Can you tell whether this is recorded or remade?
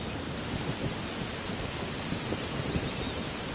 recorded